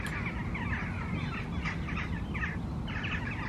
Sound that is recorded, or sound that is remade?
recorded